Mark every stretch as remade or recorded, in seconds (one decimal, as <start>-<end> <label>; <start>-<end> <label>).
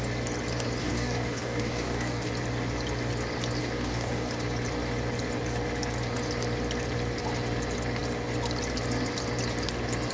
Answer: 0.0-0.8 recorded; 0.8-2.3 remade; 2.3-3.6 recorded; 3.6-4.3 remade; 4.3-10.1 recorded